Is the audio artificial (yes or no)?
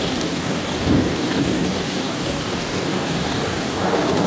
yes